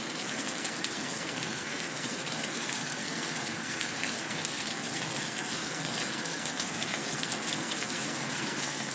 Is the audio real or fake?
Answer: fake